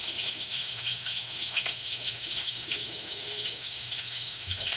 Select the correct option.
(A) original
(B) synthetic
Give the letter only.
B